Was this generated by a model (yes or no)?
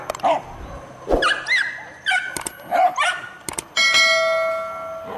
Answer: no